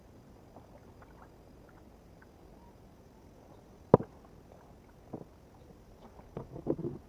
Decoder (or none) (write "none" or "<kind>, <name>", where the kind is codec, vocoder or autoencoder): none